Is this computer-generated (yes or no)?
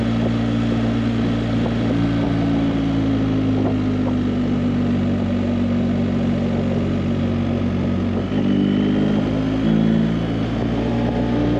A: no